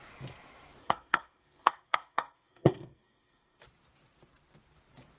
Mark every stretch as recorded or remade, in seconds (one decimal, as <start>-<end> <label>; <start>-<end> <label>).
0.0-0.8 recorded; 0.8-3.6 remade; 3.6-5.2 recorded